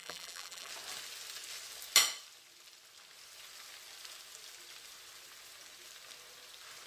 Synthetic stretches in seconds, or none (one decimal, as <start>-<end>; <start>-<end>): 0.0-0.7